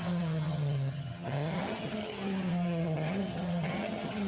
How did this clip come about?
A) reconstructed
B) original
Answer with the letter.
A